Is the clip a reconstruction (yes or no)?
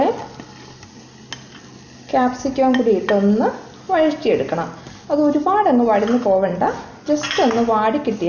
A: no